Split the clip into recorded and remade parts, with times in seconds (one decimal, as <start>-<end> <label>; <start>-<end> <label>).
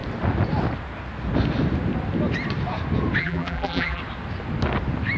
0.0-3.2 recorded; 3.2-4.0 remade; 4.0-5.2 recorded